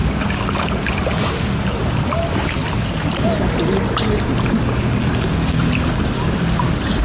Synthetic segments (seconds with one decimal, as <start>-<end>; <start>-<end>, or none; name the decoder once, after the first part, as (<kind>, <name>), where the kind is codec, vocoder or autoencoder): none